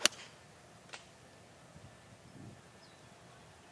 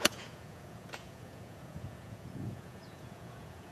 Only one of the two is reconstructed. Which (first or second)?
second